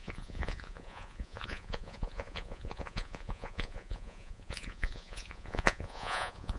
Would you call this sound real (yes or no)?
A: no